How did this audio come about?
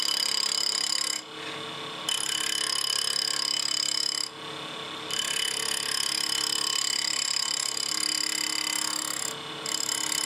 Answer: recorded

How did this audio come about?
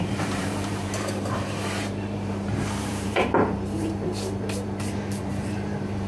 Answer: remade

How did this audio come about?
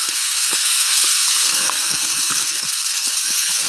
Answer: remade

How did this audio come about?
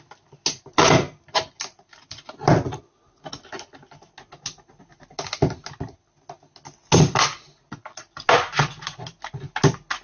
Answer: recorded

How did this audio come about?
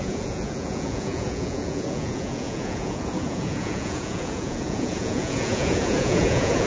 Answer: remade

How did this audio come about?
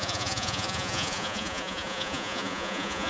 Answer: remade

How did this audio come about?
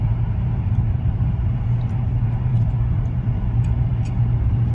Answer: remade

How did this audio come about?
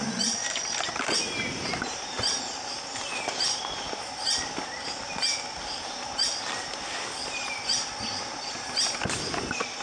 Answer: recorded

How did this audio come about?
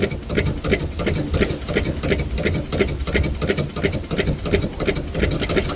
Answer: recorded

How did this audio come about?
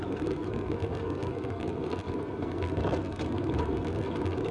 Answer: remade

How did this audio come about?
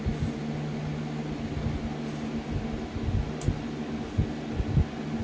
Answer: recorded